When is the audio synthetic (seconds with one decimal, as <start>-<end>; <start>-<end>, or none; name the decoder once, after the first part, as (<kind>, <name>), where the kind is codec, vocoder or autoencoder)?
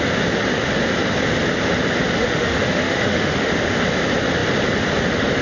2.2-3.5 (autoencoder, DAC-VAE)